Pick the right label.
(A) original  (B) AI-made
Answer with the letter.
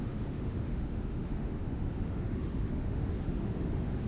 B